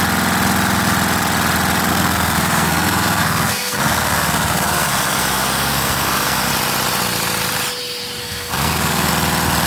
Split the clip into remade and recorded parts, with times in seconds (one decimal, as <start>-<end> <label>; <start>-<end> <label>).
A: 0.0-1.9 recorded; 1.9-6.5 remade; 6.5-8.2 recorded; 8.2-9.1 remade; 9.1-9.7 recorded